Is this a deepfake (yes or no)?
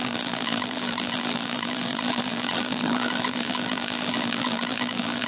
yes